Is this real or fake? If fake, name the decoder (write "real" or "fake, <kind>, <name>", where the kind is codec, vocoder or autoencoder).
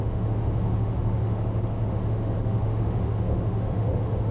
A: fake, autoencoder, DAC-VAE